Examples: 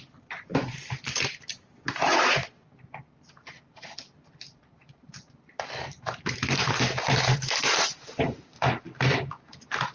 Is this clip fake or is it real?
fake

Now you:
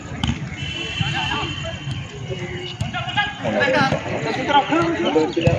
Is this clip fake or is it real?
fake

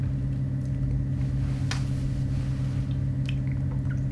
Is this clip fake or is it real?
real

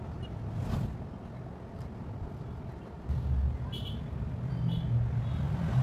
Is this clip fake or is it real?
real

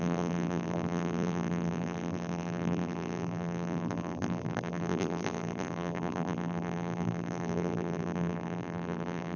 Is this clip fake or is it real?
fake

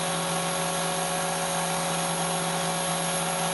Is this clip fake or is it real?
real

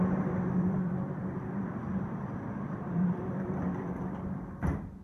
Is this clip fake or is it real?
fake